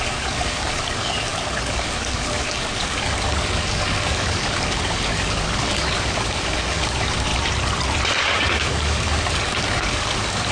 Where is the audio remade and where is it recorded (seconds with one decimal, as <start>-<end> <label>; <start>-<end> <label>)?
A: 0.0-7.3 remade; 7.3-8.1 recorded; 8.1-10.5 remade